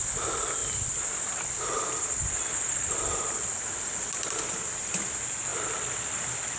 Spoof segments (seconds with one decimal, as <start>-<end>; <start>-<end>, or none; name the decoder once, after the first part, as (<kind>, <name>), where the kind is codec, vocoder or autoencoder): none